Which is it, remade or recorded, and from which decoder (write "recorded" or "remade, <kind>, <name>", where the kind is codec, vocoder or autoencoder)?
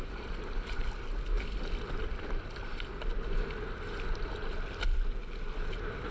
recorded